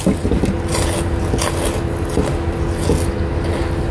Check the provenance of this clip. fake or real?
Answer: real